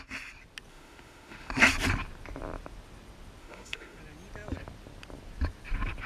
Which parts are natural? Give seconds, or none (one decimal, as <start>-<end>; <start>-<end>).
0.0-0.7; 1.5-3.4; 4.0-6.1